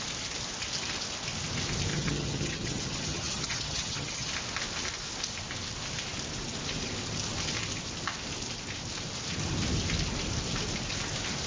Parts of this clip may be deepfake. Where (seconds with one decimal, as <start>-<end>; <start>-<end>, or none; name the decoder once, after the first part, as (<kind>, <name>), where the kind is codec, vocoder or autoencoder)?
1.9-4.3 (vocoder, HiFi-GAN)